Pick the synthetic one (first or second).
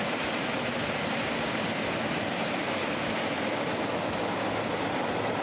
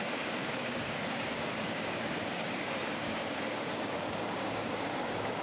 second